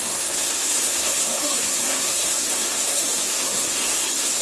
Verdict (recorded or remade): remade